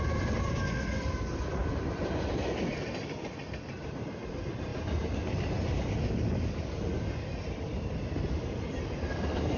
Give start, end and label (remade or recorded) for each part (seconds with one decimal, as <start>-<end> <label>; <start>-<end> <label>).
0.0-4.7 remade; 4.7-7.6 recorded; 7.6-9.6 remade